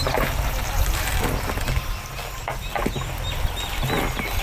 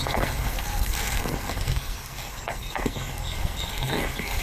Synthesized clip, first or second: second